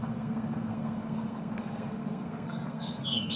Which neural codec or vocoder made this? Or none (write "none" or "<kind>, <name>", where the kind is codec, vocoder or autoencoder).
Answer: codec, SNAC